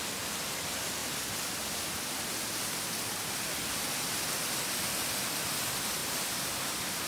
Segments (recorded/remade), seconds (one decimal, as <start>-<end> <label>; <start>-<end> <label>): 0.0-6.0 recorded; 6.0-7.1 remade

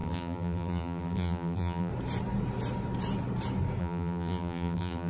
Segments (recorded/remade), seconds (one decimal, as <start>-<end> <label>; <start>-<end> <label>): 0.0-1.9 remade; 1.9-3.8 recorded; 3.8-5.1 remade

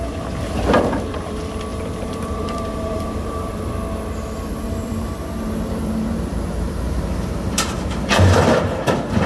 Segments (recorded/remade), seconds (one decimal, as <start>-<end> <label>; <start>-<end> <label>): 0.0-1.7 recorded; 1.7-3.6 remade; 3.6-4.5 recorded; 4.5-8.9 remade; 8.9-9.3 recorded

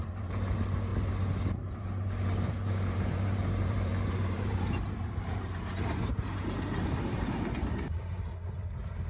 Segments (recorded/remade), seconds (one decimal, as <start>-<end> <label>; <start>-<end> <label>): 0.0-0.9 remade; 0.9-1.7 recorded; 1.7-9.1 remade

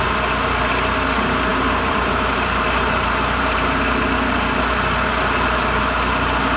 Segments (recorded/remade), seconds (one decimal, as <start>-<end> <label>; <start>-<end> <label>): 0.0-1.5 recorded; 1.5-3.8 remade; 3.8-6.6 recorded

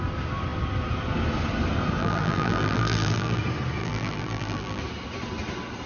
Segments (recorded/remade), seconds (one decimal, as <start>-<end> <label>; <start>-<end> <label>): 0.0-2.0 recorded; 2.0-3.4 remade; 3.4-3.8 recorded; 3.8-4.8 remade; 4.8-5.9 recorded